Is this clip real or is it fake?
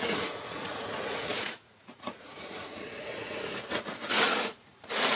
fake